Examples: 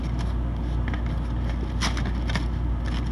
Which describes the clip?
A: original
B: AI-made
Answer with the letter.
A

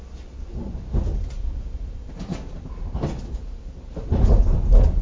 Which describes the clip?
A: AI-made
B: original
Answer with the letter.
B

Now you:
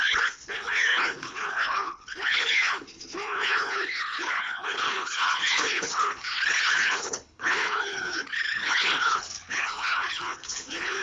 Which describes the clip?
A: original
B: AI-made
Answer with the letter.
B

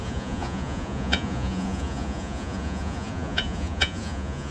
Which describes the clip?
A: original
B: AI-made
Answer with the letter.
B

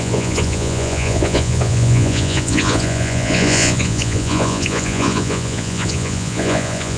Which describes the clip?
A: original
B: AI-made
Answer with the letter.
B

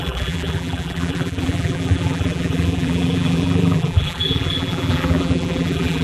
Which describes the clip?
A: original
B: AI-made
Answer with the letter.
B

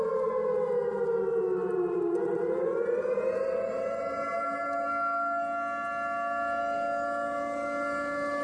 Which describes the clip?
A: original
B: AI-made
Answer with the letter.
A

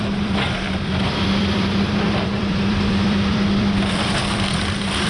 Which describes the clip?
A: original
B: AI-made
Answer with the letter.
B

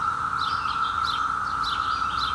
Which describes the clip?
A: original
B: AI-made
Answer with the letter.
A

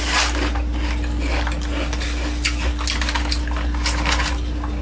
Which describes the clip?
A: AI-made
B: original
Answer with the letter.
B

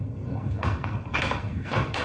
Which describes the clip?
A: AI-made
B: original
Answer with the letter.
A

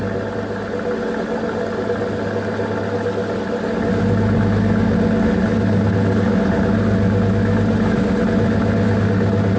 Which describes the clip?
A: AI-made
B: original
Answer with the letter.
B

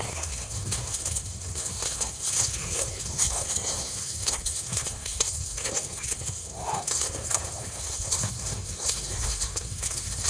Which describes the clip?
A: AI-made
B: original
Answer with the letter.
A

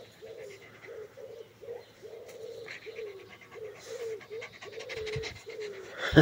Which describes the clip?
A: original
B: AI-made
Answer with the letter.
A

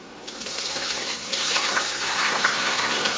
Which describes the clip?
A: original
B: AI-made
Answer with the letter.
B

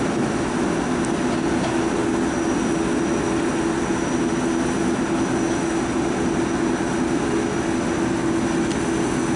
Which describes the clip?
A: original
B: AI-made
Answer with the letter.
A